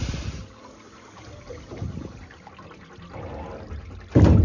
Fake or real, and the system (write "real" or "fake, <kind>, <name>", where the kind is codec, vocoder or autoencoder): real